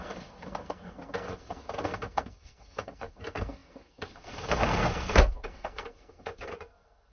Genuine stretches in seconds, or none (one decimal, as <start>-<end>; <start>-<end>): none